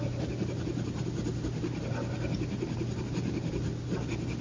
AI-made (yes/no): no